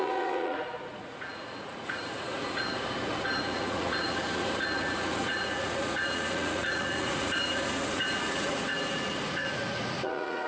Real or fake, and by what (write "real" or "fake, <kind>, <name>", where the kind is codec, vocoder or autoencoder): fake, vocoder, Vocos